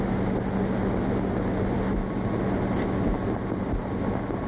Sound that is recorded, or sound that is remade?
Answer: recorded